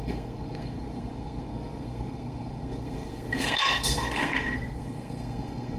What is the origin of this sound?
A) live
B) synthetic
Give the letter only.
B